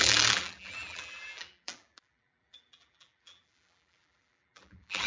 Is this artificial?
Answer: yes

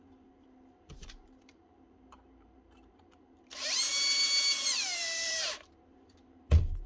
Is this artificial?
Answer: yes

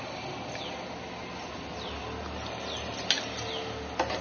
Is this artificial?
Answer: no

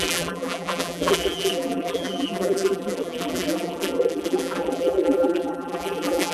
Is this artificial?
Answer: yes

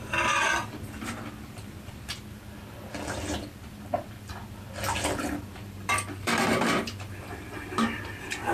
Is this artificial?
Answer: yes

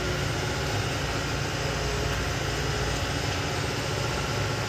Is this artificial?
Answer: no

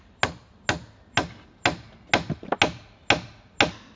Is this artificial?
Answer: no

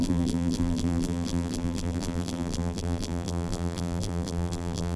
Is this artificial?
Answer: yes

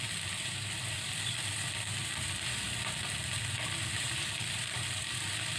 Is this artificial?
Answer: yes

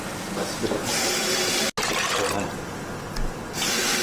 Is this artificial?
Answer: no